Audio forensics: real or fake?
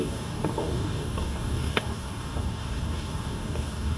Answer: fake